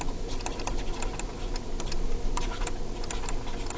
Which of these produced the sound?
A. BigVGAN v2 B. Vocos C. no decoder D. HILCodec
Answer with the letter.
C